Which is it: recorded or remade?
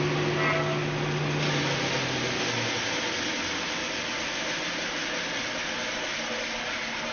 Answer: recorded